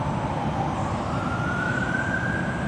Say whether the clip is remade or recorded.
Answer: recorded